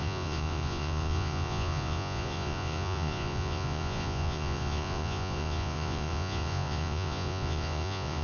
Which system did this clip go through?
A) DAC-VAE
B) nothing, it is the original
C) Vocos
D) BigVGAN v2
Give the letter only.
C